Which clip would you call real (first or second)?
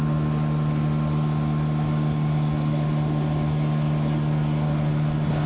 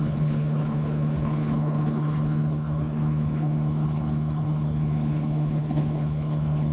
first